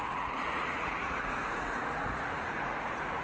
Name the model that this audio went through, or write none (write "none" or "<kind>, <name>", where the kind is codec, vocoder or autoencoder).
vocoder, Vocos